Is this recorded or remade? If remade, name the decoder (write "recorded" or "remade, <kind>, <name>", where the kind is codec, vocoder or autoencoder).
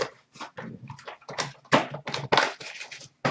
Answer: recorded